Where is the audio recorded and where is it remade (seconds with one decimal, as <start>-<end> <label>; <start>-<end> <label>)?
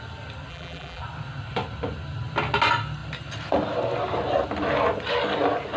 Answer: 0.0-0.5 recorded; 0.5-1.0 remade; 1.0-5.8 recorded